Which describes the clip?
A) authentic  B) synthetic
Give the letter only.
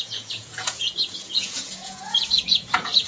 B